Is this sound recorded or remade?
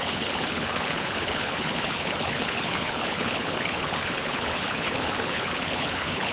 remade